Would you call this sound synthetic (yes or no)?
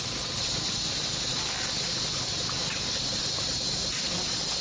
no